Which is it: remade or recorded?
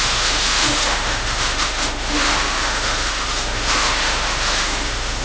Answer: remade